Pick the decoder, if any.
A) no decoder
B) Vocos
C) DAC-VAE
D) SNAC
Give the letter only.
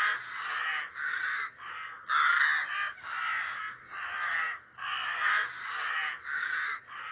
A